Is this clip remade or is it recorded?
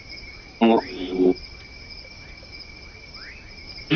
recorded